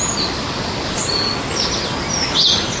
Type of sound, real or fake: real